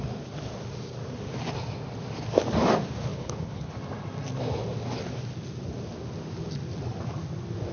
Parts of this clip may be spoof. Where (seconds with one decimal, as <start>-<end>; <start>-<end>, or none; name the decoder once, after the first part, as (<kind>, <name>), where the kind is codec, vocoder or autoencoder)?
3.1-3.7 (codec, HILCodec)